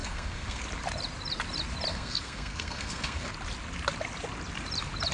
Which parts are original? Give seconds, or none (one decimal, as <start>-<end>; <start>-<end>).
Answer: 0.6-1.9; 3.3-5.1